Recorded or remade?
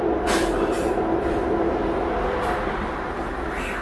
recorded